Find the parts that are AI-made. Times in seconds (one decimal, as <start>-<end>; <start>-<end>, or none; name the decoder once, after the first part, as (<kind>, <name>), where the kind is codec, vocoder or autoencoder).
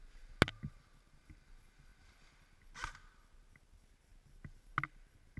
none